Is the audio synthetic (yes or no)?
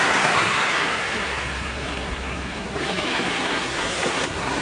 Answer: yes